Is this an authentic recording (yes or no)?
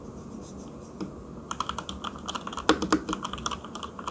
yes